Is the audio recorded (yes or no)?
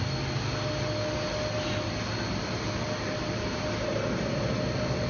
yes